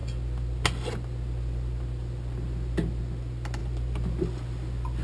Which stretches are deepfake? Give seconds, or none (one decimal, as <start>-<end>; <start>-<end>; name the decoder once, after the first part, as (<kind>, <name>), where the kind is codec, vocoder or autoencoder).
none